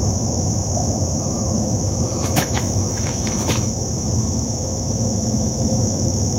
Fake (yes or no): yes